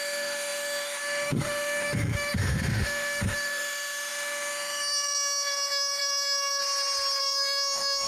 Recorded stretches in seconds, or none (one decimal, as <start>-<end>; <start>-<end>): 6.6-7.2